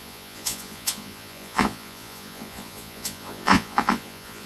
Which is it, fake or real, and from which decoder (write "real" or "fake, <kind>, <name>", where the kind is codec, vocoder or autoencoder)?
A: fake, vocoder, Vocos